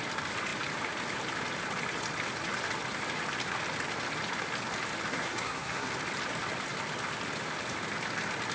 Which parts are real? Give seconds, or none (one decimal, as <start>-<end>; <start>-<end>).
0.0-5.1; 5.9-8.5